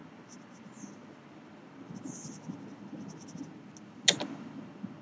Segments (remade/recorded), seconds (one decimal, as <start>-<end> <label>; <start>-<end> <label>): 0.0-5.0 recorded